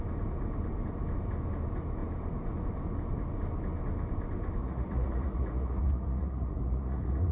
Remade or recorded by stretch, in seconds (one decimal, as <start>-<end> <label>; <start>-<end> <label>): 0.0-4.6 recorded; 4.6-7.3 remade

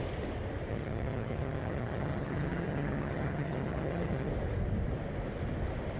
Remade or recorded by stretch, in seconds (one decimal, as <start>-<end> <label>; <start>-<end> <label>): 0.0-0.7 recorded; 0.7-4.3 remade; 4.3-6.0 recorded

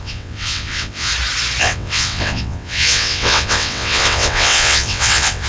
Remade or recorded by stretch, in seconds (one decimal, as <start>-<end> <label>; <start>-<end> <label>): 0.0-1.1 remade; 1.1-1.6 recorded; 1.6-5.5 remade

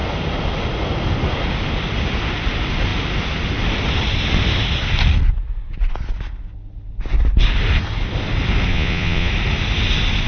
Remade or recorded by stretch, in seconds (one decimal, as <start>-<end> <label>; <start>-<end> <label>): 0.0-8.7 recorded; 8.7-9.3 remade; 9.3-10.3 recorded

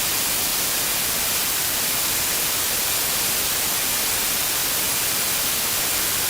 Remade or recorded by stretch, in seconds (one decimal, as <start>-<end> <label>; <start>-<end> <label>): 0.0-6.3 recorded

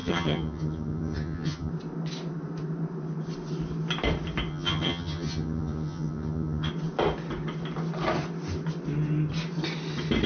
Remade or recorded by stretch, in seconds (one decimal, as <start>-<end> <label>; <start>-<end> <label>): 0.0-1.7 remade; 1.7-4.5 recorded; 4.5-6.7 remade; 6.7-10.3 recorded

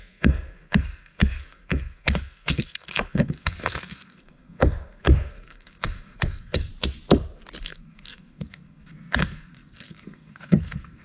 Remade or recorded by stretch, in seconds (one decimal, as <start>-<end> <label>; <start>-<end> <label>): 0.0-6.7 remade; 6.7-7.6 recorded; 7.6-11.0 remade